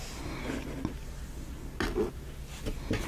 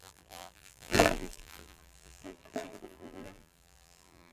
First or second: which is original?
first